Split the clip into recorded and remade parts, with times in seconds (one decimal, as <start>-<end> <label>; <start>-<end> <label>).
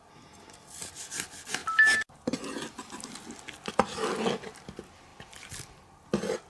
0.0-6.5 recorded